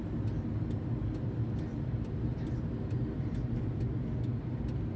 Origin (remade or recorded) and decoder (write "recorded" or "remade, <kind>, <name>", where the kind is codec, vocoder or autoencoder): recorded